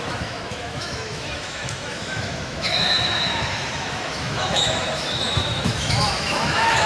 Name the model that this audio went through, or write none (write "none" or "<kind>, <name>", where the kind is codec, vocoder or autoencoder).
autoencoder, DAC-VAE